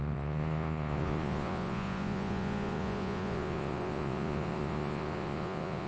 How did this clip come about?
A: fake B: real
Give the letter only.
A